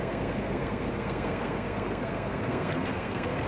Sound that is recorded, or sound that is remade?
remade